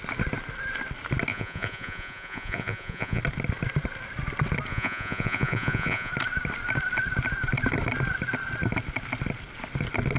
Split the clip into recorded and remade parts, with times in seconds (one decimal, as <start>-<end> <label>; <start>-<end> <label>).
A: 0.0-1.3 recorded; 1.3-3.2 remade; 3.2-4.7 recorded; 4.7-6.1 remade; 6.1-10.2 recorded